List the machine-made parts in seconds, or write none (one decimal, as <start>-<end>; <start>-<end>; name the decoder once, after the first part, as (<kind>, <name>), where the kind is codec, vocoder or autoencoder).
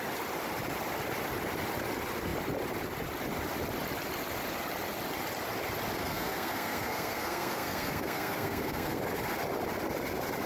6.0-9.0 (codec, SNAC)